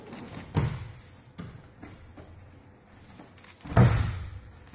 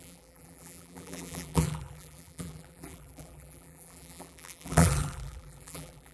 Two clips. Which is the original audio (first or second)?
first